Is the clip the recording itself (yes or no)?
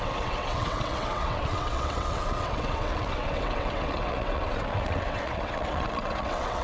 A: no